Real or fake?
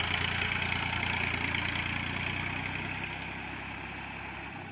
real